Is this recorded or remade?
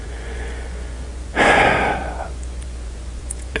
remade